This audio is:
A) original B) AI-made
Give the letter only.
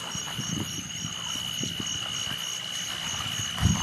B